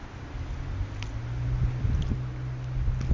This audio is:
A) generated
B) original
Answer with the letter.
B